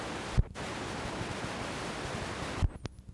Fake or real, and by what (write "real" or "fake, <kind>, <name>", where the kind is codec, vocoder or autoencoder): real